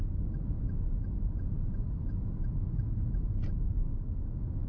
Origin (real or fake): real